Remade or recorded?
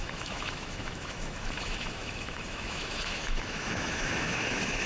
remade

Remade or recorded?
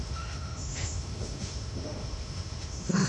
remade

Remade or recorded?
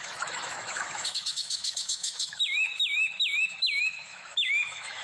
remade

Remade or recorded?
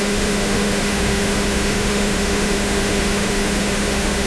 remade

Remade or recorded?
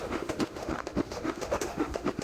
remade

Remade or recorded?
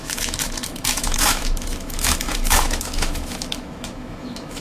remade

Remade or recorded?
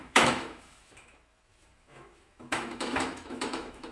remade